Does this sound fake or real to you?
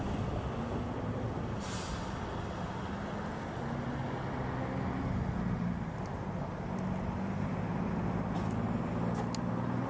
real